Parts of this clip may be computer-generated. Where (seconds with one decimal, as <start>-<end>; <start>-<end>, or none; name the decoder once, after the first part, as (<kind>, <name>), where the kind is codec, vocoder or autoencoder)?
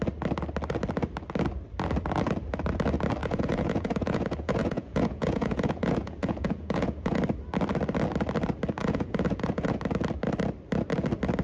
3.2-7.2 (vocoder, Vocos); 8.8-9.8